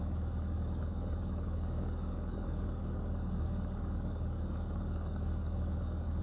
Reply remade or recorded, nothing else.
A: remade